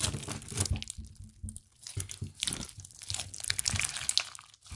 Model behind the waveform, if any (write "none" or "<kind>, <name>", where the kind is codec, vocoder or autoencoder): none